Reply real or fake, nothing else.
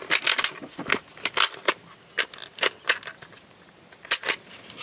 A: real